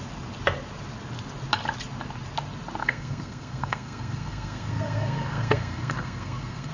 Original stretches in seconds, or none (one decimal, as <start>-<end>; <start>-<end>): 0.0-2.8